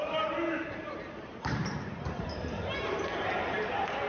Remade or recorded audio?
remade